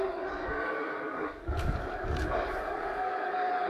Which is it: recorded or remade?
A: remade